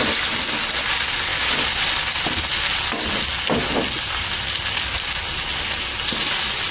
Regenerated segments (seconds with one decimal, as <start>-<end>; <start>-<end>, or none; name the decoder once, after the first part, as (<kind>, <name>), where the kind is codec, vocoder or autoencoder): none